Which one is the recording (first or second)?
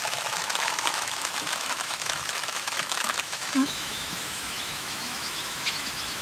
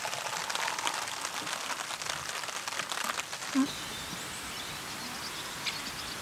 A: second